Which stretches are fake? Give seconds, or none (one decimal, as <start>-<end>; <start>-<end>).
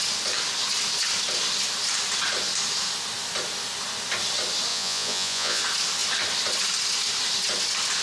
4.7-5.6